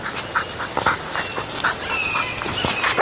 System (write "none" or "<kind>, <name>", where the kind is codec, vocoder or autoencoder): none